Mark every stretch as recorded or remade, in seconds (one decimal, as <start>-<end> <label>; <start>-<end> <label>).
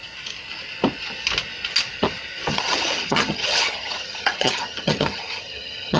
0.0-2.5 recorded; 2.5-6.0 remade